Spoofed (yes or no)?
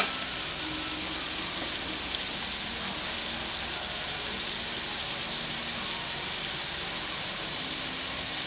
no